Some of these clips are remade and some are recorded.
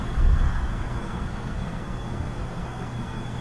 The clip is remade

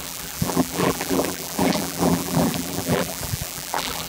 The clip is remade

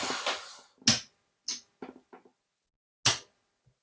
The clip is recorded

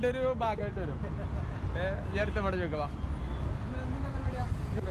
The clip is recorded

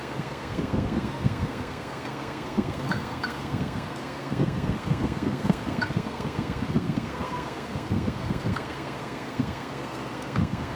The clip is remade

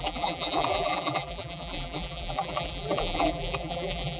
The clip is remade